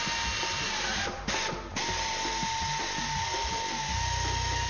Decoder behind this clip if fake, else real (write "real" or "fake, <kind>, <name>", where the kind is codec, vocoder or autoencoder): real